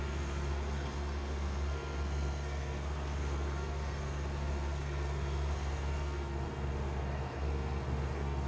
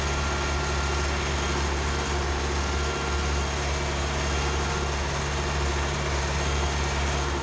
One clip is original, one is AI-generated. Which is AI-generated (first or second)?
first